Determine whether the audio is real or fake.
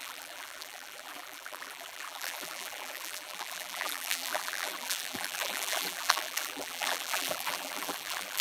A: fake